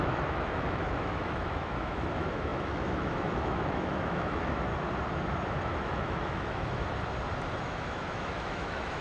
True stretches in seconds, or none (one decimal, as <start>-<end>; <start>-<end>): 4.7-5.6; 6.8-7.6

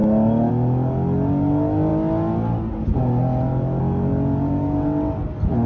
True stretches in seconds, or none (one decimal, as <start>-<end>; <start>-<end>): 0.0-5.7

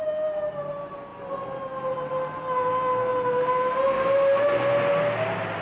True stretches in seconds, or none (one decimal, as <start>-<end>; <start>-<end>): 0.0-5.6

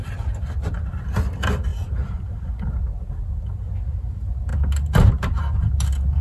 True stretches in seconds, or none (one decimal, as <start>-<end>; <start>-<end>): 0.0-6.2

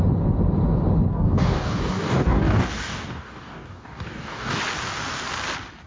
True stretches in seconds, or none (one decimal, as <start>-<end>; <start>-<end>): 0.0-1.1; 4.6-5.9

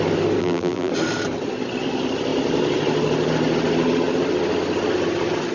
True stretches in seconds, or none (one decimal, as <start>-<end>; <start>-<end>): 0.0-0.4; 0.9-5.5